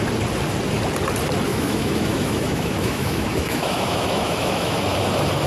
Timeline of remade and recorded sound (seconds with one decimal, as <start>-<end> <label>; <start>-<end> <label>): 0.0-1.5 recorded; 1.5-4.8 remade; 4.8-5.5 recorded